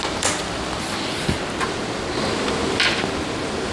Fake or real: real